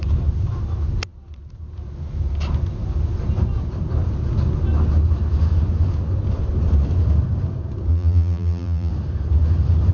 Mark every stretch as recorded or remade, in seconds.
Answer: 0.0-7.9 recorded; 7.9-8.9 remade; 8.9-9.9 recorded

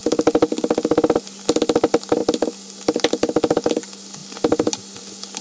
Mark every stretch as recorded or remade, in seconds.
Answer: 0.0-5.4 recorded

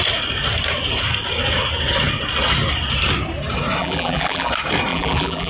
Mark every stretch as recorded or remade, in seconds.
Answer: 0.0-3.8 recorded; 3.8-4.5 remade; 4.5-4.9 recorded; 4.9-5.5 remade

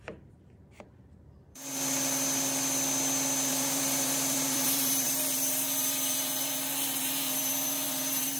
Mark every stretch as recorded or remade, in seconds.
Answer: 0.0-1.7 remade; 1.7-3.5 recorded; 3.5-8.4 remade